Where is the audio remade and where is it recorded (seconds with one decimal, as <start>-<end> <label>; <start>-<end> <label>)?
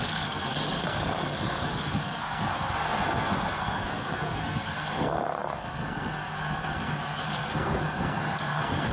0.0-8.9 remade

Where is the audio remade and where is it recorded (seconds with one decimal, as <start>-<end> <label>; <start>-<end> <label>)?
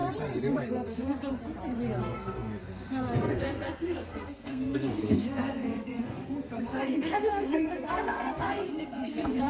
0.0-0.5 recorded; 0.5-1.3 remade; 1.3-2.0 recorded; 2.0-9.5 remade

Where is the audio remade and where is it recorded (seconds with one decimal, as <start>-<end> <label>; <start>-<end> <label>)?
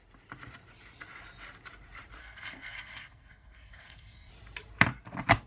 0.0-2.2 recorded; 2.2-4.3 remade; 4.3-5.5 recorded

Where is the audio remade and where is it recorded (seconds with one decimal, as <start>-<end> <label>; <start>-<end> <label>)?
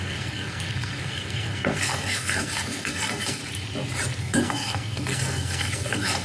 0.0-3.4 remade; 3.4-4.2 recorded; 4.2-6.2 remade